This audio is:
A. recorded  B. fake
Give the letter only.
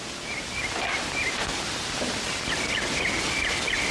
A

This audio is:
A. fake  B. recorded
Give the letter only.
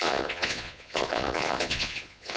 A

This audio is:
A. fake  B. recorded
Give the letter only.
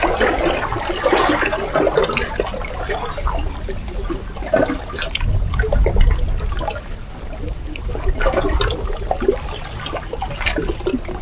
B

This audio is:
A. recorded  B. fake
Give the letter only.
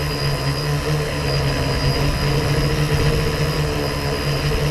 A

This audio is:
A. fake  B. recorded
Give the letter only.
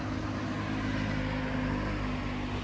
B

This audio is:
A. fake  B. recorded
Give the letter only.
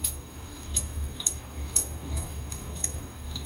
A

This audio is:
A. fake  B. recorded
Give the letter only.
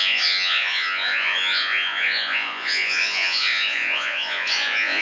A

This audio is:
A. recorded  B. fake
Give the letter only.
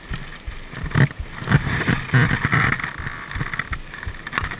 A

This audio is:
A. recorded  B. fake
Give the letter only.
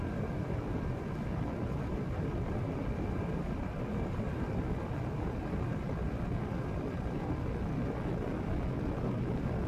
A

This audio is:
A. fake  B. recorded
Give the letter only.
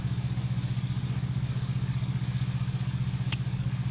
A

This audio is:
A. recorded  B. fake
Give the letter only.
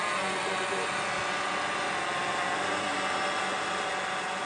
A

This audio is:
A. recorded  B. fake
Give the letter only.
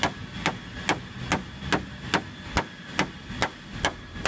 A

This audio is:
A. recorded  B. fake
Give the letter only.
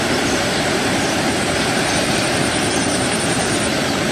B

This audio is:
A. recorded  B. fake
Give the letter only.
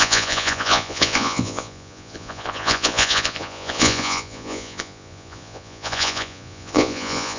B